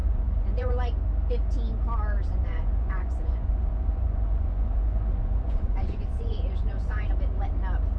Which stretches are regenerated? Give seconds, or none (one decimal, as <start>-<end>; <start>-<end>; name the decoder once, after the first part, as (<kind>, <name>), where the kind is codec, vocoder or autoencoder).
0.0-0.7 (vocoder, Vocos); 2.3-7.1